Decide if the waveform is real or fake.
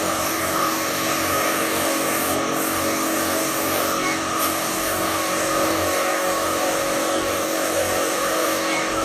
fake